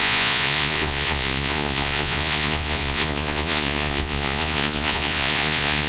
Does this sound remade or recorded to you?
remade